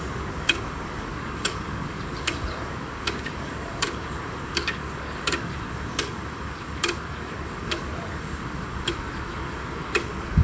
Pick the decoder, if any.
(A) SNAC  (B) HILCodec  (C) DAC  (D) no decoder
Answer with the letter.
C